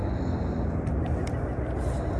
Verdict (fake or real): real